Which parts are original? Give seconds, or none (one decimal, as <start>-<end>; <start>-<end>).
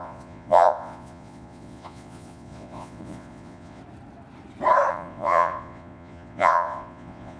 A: 3.8-4.9